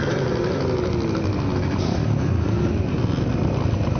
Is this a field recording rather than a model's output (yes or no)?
yes